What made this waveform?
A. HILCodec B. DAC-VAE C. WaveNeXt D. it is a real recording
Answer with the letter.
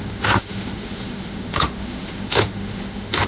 B